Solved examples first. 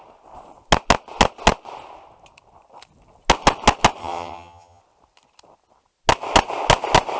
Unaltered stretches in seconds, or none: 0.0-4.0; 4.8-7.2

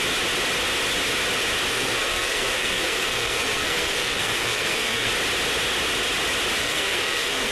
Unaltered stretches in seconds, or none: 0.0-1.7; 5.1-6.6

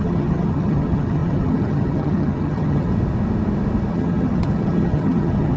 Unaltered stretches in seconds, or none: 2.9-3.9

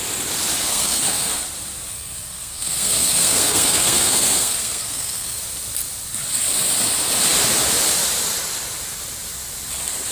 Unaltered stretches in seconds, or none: 0.0-0.7; 1.3-1.9; 5.4-10.1